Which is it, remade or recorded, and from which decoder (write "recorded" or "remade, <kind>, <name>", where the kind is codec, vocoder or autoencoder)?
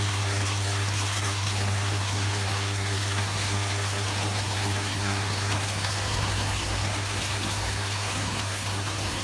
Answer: remade, codec, SNAC